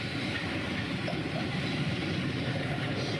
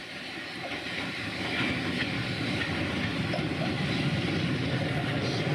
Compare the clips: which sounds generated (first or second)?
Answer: first